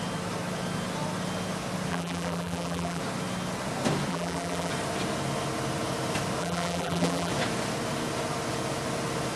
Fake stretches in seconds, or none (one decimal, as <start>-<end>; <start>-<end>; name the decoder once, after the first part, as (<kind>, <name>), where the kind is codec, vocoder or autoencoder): 1.9-3.0 (vocoder, BigVGAN v2); 4.1-4.7; 6.4-7.3